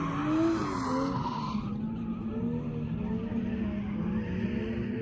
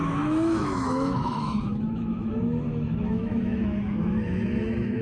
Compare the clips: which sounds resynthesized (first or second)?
second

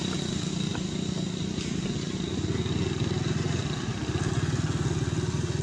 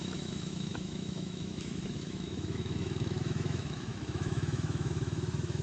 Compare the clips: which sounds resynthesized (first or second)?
second